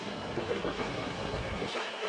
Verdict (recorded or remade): remade